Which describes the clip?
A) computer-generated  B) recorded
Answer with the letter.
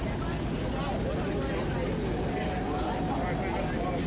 B